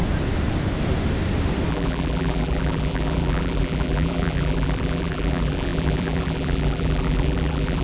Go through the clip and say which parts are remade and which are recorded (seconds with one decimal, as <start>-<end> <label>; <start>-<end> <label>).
0.0-1.7 recorded; 1.7-7.8 remade